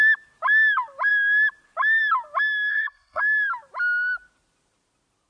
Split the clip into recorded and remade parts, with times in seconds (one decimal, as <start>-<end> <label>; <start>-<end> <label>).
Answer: 0.0-2.7 recorded; 2.7-3.2 remade; 3.2-5.3 recorded